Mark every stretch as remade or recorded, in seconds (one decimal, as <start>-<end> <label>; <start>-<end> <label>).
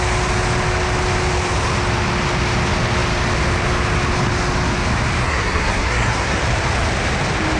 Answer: 0.0-5.2 recorded; 5.2-6.4 remade; 6.4-7.6 recorded